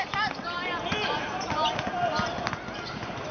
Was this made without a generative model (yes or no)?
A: yes